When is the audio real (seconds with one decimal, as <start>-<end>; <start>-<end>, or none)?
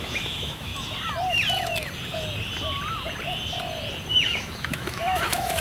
0.7-4.1